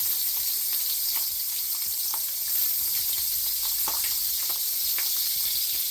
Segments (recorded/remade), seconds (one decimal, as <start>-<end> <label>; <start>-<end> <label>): 0.0-5.9 recorded